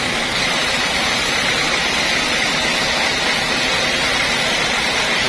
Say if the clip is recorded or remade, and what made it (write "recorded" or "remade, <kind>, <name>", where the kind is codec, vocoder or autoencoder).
recorded